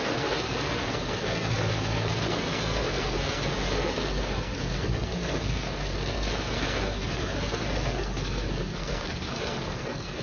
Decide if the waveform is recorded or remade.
remade